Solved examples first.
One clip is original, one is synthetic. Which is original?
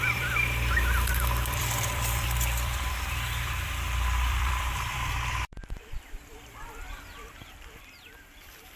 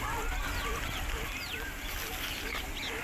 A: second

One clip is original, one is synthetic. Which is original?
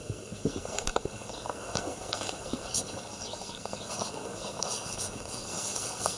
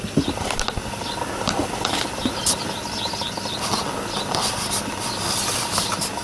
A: second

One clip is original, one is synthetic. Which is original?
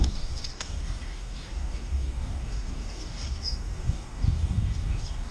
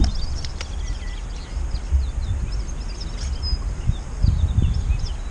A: second